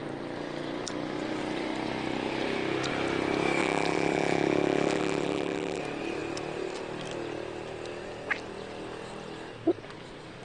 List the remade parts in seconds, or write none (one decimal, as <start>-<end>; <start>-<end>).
3.6-5.8